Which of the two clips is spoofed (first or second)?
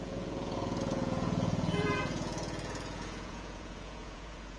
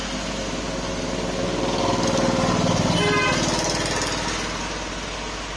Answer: first